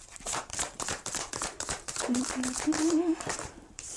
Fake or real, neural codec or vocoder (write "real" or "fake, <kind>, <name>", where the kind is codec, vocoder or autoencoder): fake, vocoder, BigVGAN v2